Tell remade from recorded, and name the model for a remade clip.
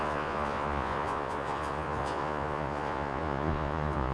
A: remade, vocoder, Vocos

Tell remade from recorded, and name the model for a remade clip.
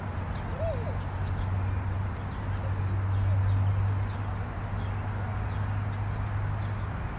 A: recorded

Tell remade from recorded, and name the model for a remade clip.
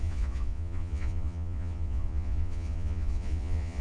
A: remade, vocoder, Vocos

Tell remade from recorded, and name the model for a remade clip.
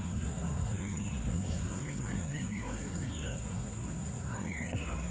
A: remade, codec, SNAC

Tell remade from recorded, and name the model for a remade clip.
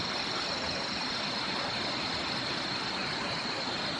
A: recorded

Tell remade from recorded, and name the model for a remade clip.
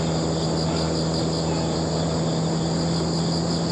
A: recorded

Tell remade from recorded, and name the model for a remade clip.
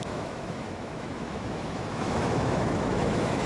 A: remade, autoencoder, DAC-VAE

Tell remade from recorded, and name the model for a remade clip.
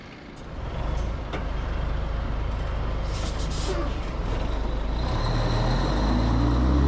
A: recorded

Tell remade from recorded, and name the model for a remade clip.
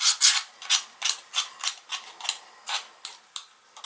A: recorded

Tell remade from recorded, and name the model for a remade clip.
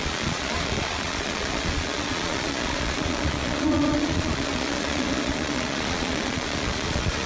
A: remade, vocoder, Vocos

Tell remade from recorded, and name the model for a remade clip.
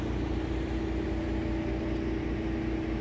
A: recorded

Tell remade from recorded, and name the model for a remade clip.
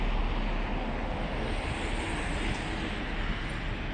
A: recorded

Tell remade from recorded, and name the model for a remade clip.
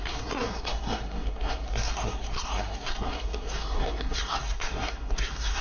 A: remade, codec, SNAC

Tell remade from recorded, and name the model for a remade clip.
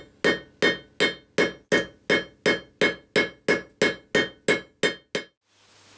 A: recorded